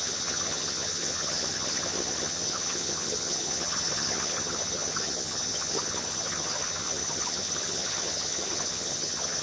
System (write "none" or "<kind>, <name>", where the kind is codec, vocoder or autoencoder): vocoder, HiFi-GAN